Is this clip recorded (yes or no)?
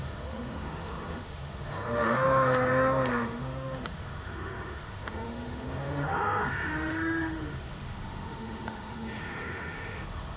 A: no